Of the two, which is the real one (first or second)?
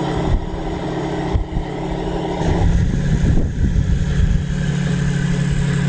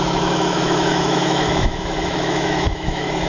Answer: first